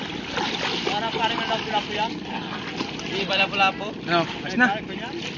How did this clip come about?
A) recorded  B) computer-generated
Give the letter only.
A